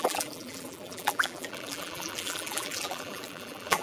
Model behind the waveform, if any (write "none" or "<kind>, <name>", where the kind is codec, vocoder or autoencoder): vocoder, BigVGAN v2